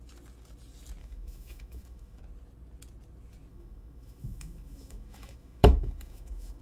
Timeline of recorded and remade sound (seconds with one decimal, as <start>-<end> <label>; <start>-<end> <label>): 0.0-1.0 recorded; 1.0-2.2 remade; 2.2-3.5 recorded; 3.5-6.6 remade